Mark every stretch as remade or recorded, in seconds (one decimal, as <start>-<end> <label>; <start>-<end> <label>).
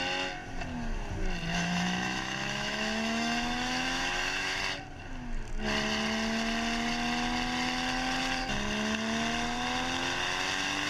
0.0-1.5 recorded; 1.5-4.6 remade; 4.6-10.9 recorded